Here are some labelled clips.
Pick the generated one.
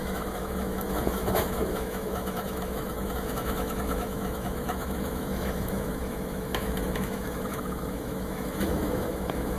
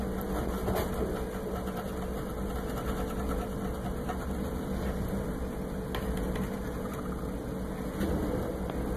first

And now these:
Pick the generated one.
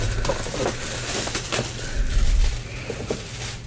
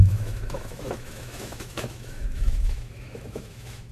second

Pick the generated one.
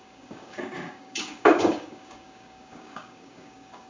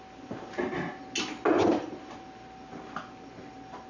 first